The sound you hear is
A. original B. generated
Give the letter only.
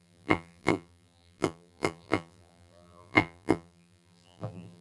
B